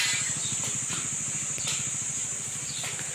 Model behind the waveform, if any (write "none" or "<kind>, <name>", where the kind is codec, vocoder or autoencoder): none